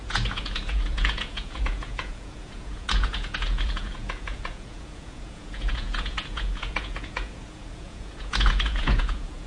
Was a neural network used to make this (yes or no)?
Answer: yes